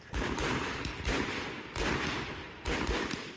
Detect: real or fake real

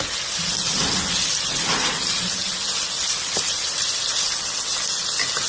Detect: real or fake real